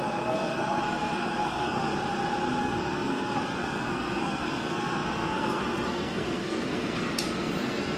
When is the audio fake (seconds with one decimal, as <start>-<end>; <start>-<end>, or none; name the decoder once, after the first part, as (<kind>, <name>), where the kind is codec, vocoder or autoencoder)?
0.0-1.9 (codec, SNAC); 2.6-8.0